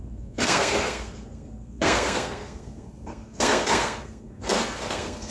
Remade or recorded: remade